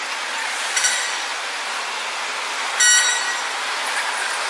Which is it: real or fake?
real